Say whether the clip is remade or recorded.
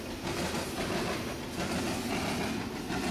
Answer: recorded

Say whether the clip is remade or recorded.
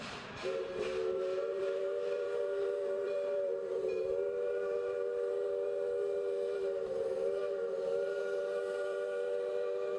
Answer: remade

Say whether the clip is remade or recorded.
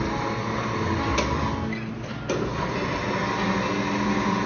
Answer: recorded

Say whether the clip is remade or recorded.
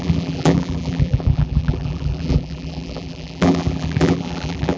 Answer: remade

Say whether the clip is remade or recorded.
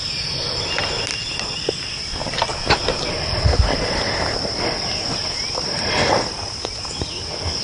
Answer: recorded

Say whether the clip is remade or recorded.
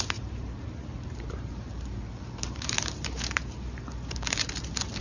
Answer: remade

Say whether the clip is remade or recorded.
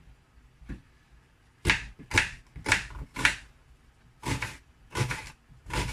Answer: recorded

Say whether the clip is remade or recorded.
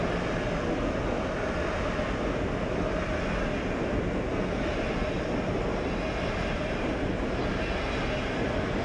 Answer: recorded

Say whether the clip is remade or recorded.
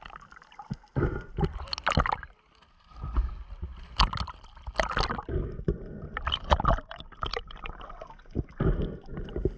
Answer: recorded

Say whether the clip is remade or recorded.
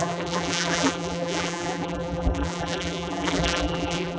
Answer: remade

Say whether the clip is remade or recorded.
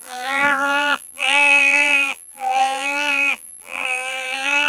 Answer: remade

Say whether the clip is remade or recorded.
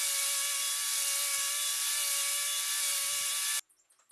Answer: recorded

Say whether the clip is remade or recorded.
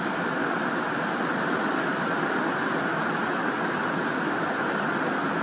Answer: remade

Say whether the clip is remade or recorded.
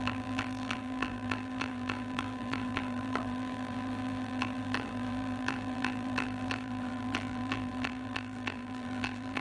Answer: remade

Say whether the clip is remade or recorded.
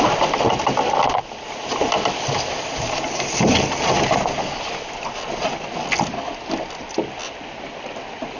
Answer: recorded